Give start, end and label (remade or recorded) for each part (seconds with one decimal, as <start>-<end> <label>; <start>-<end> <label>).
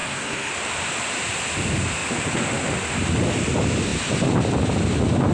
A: 0.0-0.5 remade; 0.5-5.3 recorded